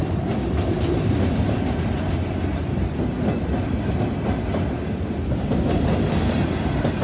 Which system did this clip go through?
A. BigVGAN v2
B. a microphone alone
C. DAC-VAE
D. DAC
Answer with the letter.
B